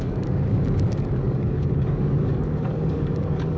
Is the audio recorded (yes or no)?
no